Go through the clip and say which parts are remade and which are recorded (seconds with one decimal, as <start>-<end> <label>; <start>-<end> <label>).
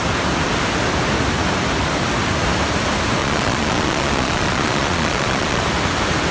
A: 0.0-3.2 recorded; 3.2-5.6 remade; 5.6-6.3 recorded